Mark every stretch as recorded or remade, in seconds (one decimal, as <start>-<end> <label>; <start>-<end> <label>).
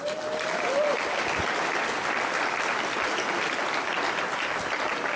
0.0-5.2 recorded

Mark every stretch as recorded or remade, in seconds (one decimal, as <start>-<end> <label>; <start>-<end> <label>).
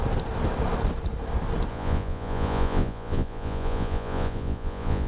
0.0-1.7 recorded; 1.7-5.1 remade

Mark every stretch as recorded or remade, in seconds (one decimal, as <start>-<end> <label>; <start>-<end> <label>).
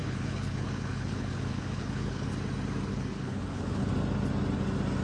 0.0-2.3 remade; 2.3-2.9 recorded; 2.9-3.9 remade; 3.9-5.0 recorded